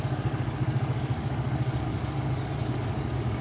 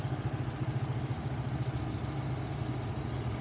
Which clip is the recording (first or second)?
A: second